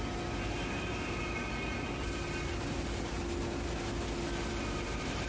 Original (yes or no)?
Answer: yes